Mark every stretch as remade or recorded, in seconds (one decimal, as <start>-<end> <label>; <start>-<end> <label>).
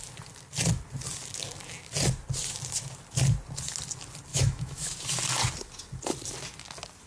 0.0-4.3 recorded; 4.3-4.9 remade; 4.9-7.1 recorded